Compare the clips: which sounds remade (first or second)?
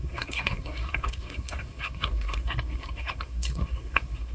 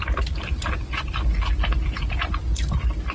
first